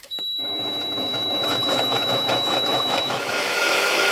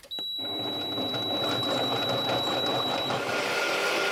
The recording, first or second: second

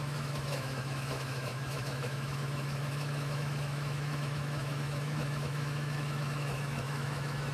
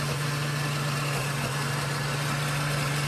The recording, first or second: second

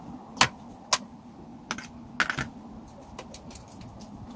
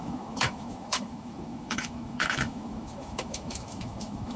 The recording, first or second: first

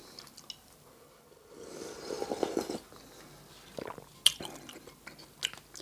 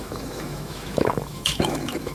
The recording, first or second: first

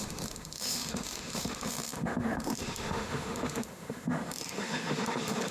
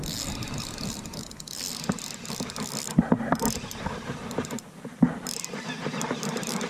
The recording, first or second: second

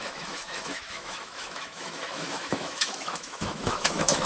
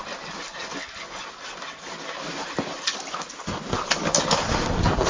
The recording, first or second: second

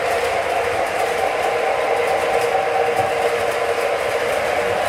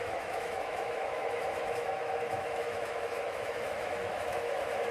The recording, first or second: first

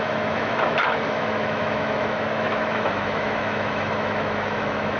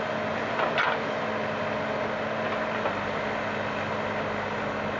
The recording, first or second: second